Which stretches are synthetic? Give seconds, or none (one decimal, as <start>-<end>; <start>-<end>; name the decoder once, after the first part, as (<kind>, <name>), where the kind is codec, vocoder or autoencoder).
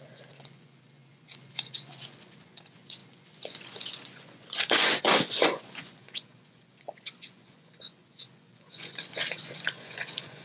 0.0-10.4 (vocoder, Vocos)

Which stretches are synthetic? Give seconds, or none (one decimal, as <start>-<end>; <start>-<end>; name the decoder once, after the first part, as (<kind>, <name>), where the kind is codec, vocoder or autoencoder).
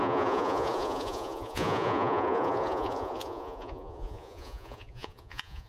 0.0-5.7 (vocoder, Vocos)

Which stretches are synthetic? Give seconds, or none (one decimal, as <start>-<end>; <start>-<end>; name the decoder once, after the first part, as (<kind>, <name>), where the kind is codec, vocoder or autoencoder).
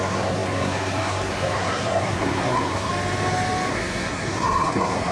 0.0-2.9 (codec, SNAC); 3.7-5.1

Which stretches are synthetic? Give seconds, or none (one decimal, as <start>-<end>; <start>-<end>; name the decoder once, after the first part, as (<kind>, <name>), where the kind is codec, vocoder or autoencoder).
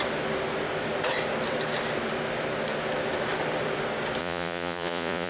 4.2-5.3 (vocoder, Vocos)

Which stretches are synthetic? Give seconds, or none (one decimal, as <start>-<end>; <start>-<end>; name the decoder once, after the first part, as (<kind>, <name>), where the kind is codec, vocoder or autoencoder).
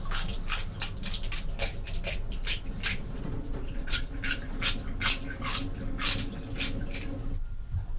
2.9-4.0 (vocoder, Vocos)